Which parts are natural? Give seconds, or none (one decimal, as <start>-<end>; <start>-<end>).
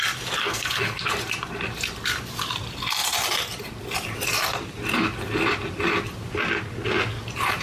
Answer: 0.0-0.4; 1.0-7.6